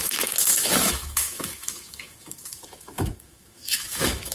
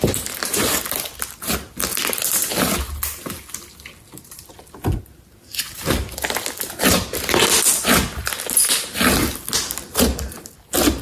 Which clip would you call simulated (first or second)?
first